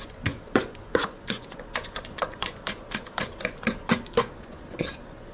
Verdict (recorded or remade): remade